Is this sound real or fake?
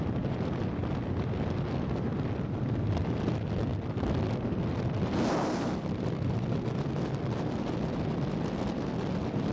real